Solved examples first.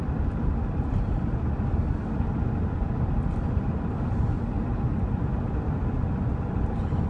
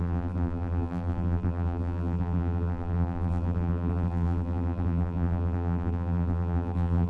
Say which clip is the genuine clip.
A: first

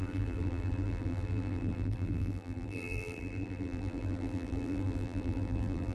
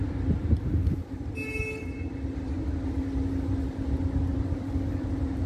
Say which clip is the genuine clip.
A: second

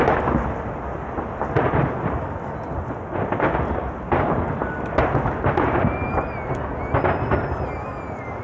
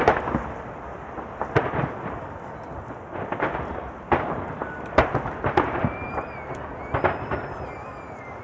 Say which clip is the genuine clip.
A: first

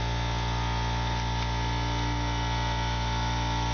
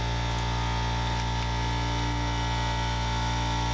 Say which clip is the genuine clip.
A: second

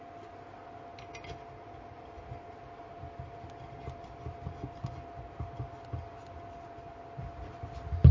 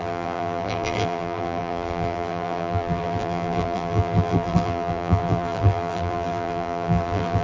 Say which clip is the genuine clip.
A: first